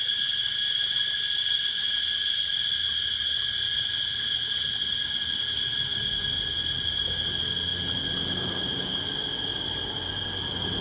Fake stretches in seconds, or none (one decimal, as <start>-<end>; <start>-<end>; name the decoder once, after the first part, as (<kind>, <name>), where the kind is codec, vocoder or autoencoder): 9.5-10.1 (vocoder, BigVGAN v2)